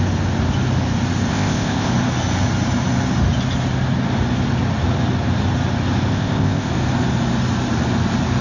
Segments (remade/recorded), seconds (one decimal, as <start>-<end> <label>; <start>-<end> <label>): 0.0-1.3 recorded; 1.3-1.9 remade; 1.9-6.1 recorded; 6.1-6.7 remade; 6.7-8.4 recorded